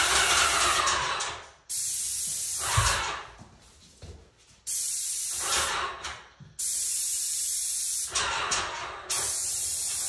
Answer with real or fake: real